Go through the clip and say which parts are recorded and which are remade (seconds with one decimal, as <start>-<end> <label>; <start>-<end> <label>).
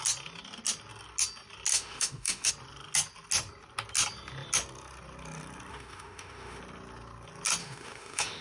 0.0-1.7 recorded; 1.7-2.5 remade; 2.5-5.7 recorded; 5.7-6.6 remade; 6.6-7.6 recorded; 7.6-8.4 remade